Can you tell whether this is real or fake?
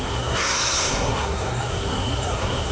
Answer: fake